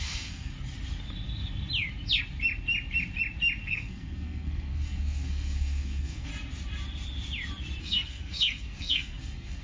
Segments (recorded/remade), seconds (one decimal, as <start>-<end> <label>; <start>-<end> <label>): 0.0-0.5 remade; 0.5-3.6 recorded; 3.6-6.3 remade; 6.3-7.8 recorded; 7.8-9.6 remade